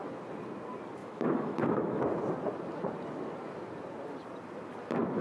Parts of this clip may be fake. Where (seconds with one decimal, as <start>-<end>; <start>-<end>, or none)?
1.0-2.0